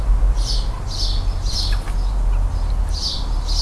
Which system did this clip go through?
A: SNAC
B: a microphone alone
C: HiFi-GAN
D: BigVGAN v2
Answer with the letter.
B